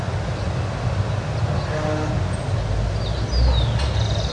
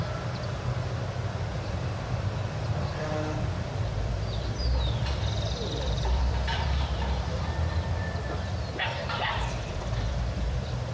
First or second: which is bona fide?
first